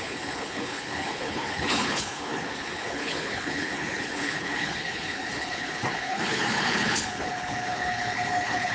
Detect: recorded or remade remade